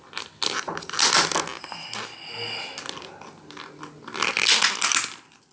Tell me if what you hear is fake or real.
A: real